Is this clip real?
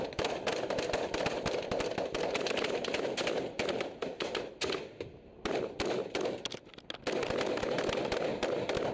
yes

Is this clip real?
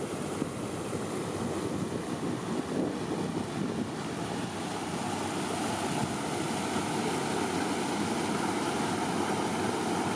yes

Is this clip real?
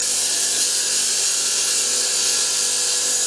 yes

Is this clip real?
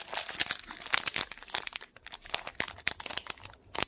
yes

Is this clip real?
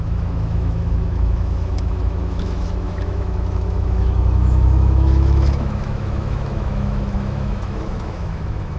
no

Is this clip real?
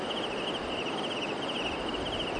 yes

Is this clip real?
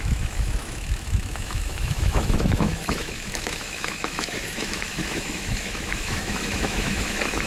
no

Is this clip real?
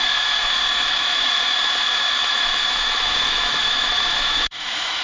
no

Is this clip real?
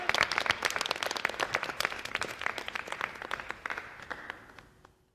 yes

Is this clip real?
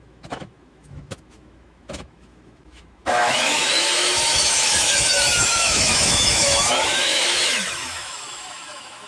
no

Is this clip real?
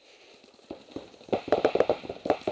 yes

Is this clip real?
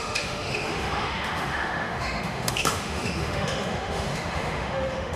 no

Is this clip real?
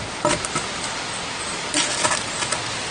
yes